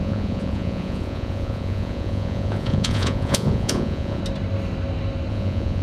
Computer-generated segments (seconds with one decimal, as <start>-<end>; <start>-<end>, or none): 0.0-4.2; 5.3-5.8